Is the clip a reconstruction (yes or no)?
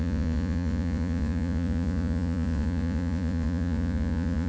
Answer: yes